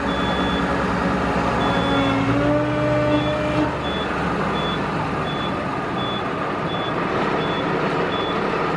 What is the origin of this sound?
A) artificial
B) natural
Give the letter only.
B